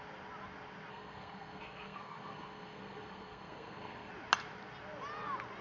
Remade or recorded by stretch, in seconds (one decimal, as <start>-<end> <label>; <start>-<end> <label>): 0.0-0.9 recorded; 0.9-4.1 remade; 4.1-5.6 recorded